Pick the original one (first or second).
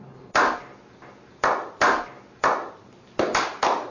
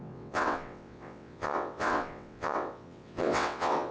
first